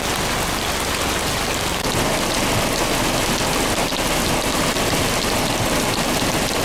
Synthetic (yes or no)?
no